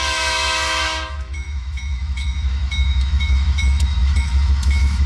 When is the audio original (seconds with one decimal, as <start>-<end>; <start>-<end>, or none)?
none